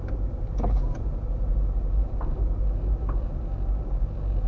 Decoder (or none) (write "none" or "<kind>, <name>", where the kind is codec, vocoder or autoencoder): vocoder, BigVGAN v2